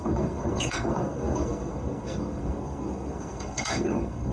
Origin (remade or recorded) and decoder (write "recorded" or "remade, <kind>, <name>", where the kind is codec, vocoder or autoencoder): remade, codec, SNAC